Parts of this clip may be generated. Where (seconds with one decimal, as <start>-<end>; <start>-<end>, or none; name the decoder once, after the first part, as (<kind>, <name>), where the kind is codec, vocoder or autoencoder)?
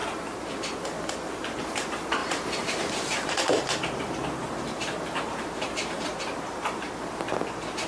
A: 2.2-6.9 (vocoder, BigVGAN v2)